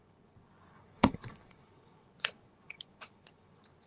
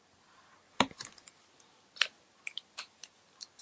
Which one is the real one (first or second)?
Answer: second